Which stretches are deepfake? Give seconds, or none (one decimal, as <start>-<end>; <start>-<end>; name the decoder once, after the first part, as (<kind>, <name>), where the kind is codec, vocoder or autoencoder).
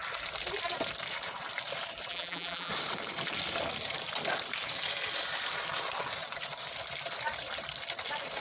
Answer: 2.1-2.7 (vocoder, BigVGAN v2)